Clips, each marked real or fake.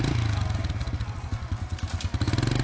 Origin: real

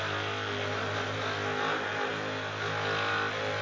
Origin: real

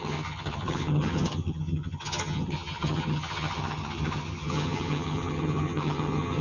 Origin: fake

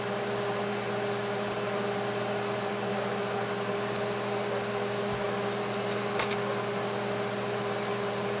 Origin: real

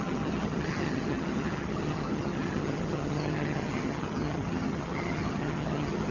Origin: fake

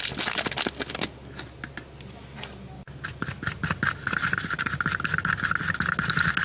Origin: real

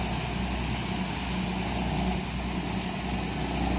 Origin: real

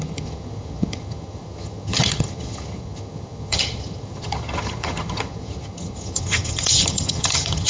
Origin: fake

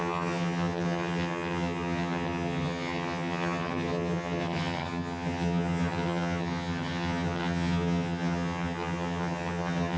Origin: fake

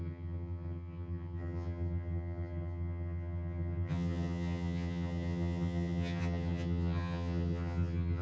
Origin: fake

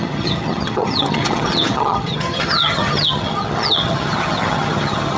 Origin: fake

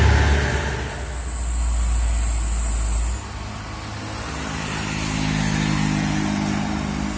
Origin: real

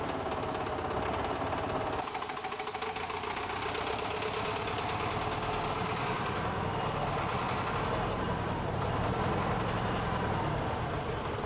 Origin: real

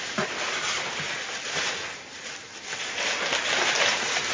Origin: real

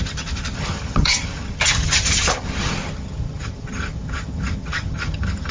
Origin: fake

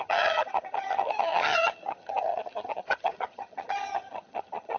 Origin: fake